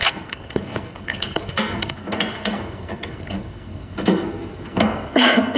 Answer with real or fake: fake